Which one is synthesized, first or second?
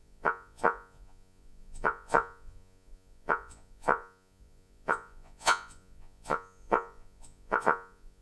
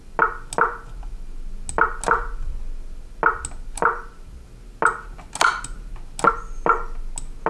first